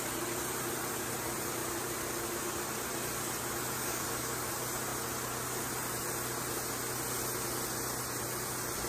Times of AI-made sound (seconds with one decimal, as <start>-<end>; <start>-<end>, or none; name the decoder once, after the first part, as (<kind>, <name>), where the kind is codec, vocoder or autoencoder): 3.8-4.5 (codec, DAC)